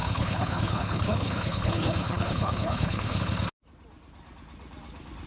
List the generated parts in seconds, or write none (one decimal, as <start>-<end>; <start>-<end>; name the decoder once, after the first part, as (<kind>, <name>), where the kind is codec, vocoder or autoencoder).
0.0-3.2 (codec, HILCodec)